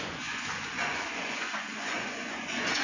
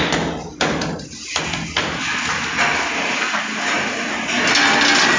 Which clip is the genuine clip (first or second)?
second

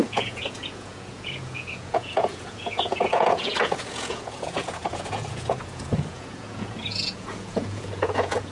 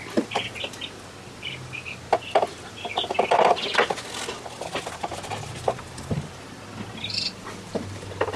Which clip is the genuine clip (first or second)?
second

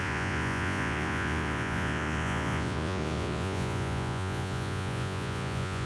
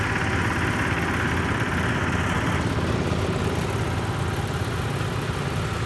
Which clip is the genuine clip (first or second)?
second